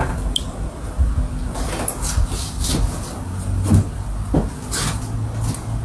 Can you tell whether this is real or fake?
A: real